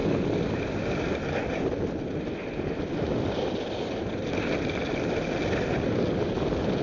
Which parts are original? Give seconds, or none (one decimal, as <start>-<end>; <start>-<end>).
0.0-6.8